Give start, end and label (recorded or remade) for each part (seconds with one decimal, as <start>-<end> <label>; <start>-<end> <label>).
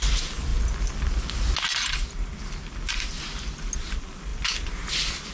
0.0-5.3 recorded